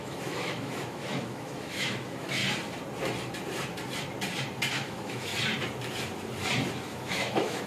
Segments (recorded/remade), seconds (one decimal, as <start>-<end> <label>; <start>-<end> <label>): 0.0-2.4 remade; 2.4-4.7 recorded; 4.7-5.3 remade; 5.3-6.7 recorded; 6.7-7.7 remade